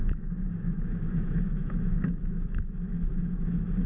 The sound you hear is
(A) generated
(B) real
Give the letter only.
A